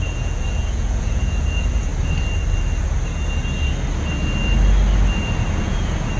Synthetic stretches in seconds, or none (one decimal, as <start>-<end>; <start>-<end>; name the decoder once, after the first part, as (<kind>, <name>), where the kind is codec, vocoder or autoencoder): 0.0-1.9 (vocoder, Vocos); 5.6-6.2